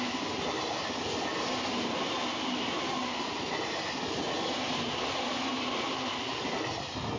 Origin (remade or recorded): recorded